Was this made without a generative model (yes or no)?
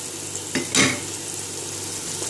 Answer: yes